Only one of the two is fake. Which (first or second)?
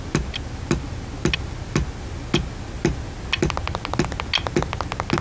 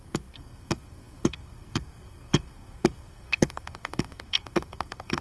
second